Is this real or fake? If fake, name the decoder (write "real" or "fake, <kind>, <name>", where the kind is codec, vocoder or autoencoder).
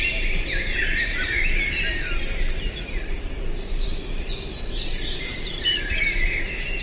fake, vocoder, BigVGAN v2